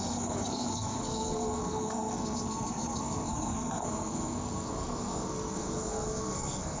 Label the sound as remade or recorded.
remade